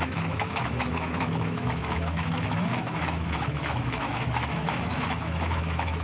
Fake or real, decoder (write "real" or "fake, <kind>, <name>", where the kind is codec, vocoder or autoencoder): fake, autoencoder, DAC-VAE